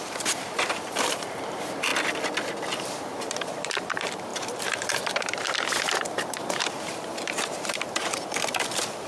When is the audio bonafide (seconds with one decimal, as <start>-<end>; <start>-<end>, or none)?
1.9-2.8